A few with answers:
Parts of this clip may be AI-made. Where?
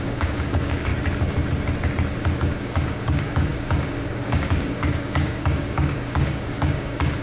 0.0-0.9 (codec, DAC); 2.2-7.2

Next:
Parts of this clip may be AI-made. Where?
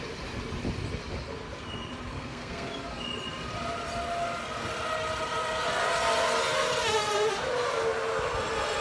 2.1-2.7 (codec, SNAC)